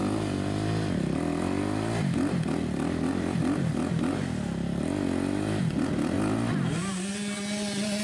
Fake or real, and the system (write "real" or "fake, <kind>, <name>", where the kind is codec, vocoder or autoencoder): real